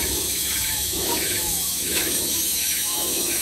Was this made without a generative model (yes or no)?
no